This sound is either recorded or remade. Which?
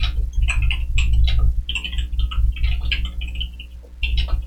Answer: recorded